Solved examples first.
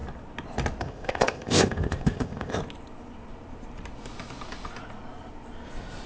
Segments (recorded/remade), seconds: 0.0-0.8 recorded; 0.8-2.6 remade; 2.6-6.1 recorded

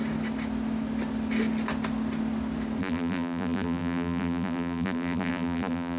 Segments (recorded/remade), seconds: 0.0-2.8 recorded; 2.8-6.0 remade

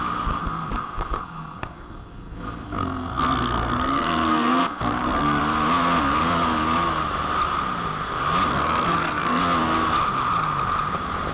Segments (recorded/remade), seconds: 0.0-0.4 recorded; 0.4-5.4 remade; 5.4-8.5 recorded; 8.5-9.4 remade; 9.4-11.3 recorded

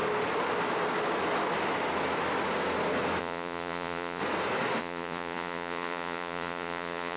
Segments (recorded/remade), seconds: 0.0-3.2 recorded; 3.2-4.2 remade; 4.2-4.8 recorded; 4.8-7.2 remade

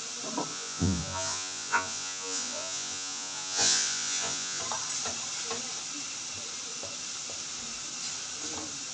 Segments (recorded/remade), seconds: 0.0-0.5 recorded; 0.5-4.6 remade; 4.6-8.9 recorded